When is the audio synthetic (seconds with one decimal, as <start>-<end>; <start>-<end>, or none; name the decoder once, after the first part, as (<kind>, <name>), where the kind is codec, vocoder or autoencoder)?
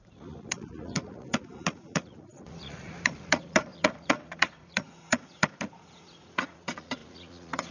0.0-7.7 (vocoder, Vocos)